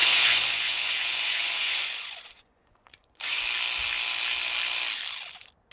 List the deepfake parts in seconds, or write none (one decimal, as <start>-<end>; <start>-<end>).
0.0-3.4